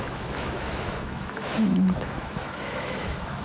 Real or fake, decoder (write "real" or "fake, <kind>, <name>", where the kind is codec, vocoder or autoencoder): fake, autoencoder, DAC-VAE